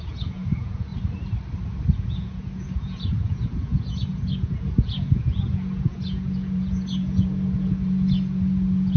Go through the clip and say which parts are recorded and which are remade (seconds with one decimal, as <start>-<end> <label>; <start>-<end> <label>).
0.0-0.9 remade; 0.9-2.1 recorded; 2.1-9.0 remade